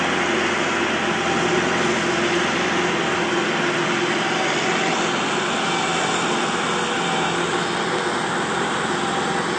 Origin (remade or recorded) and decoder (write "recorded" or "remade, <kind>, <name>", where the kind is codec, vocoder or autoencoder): recorded